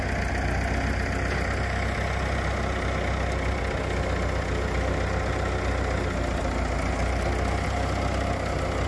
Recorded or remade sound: recorded